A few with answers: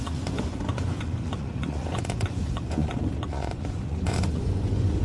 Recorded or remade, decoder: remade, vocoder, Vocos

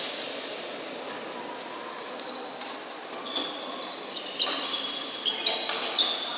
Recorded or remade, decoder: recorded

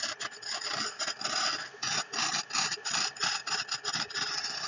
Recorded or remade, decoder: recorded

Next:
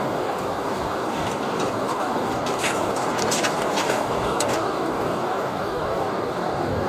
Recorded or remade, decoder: remade, codec, DAC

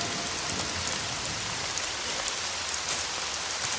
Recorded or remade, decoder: recorded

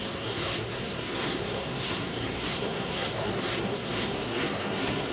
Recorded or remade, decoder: remade, codec, SNAC